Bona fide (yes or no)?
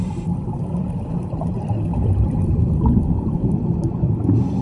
no